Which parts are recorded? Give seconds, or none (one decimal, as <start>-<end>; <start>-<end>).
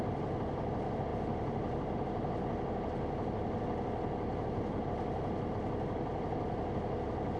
0.0-7.4